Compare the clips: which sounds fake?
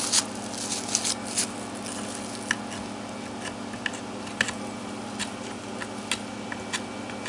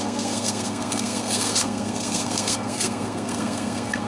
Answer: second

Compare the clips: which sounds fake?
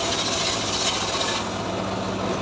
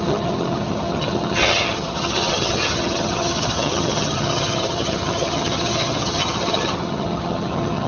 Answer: second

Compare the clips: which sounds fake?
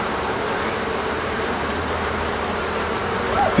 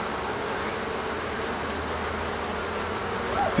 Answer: first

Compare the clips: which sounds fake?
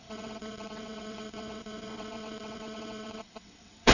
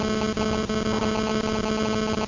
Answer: first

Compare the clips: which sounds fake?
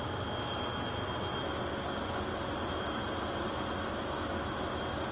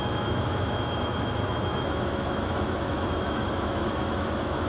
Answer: second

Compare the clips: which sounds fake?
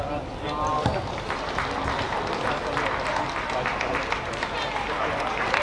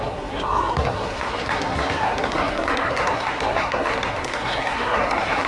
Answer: second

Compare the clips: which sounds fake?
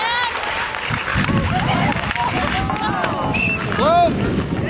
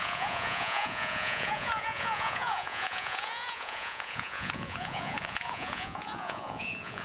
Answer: second